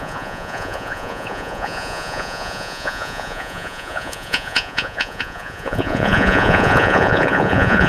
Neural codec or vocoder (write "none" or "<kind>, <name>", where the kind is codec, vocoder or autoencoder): vocoder, Vocos